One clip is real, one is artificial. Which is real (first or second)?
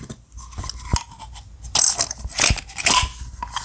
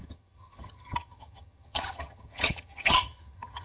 first